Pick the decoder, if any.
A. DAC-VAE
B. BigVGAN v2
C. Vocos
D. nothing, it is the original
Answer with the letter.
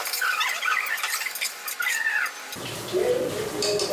D